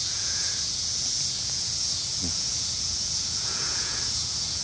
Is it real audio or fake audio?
fake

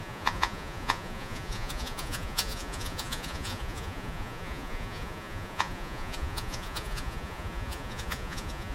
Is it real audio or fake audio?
fake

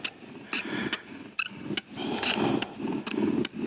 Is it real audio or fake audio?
real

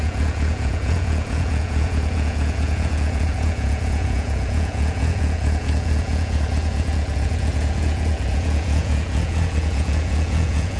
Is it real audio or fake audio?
fake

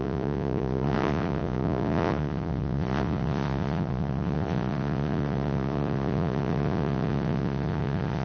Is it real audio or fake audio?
fake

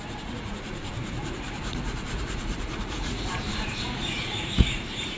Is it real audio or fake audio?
fake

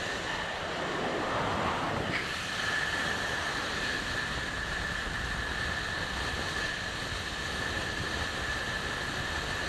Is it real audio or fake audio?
real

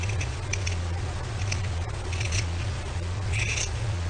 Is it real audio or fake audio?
fake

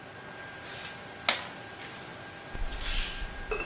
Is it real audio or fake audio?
real